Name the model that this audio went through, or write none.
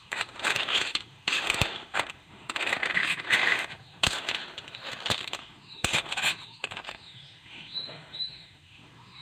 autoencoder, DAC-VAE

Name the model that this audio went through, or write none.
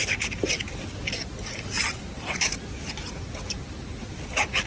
none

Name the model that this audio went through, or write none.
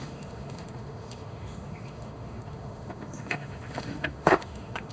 autoencoder, DAC-VAE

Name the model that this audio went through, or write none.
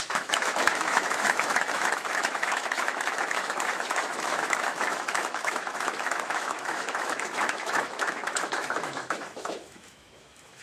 autoencoder, DAC-VAE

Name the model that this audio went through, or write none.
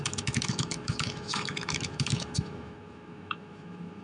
autoencoder, DAC-VAE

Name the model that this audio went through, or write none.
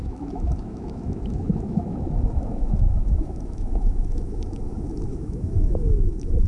autoencoder, DAC-VAE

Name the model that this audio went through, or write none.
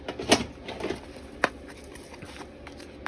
none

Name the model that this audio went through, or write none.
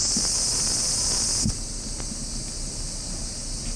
none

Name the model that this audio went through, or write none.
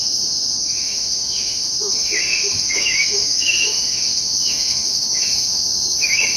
autoencoder, DAC-VAE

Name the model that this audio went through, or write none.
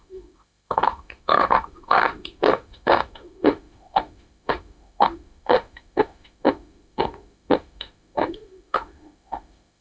autoencoder, DAC-VAE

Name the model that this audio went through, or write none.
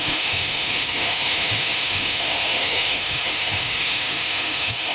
autoencoder, DAC-VAE